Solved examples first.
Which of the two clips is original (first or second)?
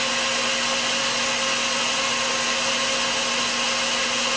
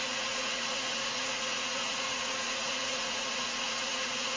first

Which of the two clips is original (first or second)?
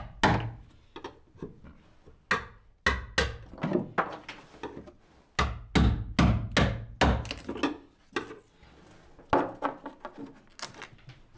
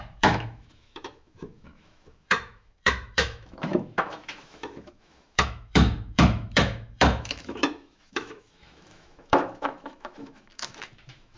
first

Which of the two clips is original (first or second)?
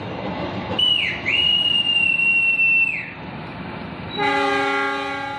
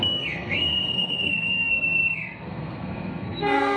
first